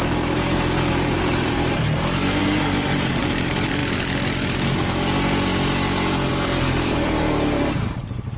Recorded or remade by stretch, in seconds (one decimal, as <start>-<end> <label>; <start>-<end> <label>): 0.0-3.8 remade; 3.8-6.3 recorded; 6.3-8.4 remade